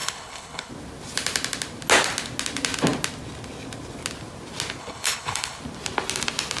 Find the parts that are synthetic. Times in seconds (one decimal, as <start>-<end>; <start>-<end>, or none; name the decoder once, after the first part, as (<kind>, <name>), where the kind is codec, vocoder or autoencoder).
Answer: 0.0-0.7 (codec, HILCodec); 4.8-5.6